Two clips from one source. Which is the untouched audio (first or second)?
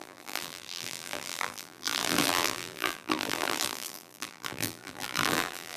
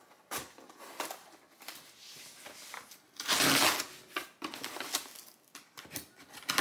second